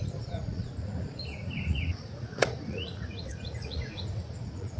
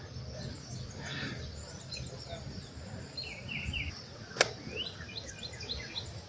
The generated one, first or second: first